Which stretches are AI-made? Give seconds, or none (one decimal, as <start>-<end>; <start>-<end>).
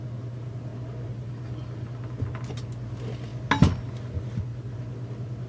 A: none